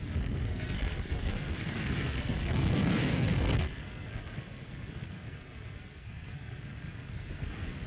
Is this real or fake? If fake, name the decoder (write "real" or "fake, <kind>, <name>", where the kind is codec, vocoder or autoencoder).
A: fake, codec, SNAC